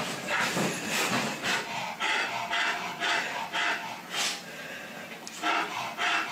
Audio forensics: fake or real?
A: real